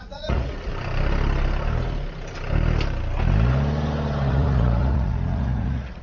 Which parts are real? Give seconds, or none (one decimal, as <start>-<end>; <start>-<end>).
0.7-4.3